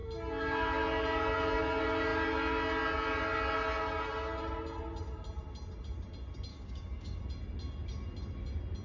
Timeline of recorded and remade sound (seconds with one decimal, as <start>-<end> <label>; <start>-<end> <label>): 0.0-6.5 recorded; 6.5-7.2 remade; 7.2-8.8 recorded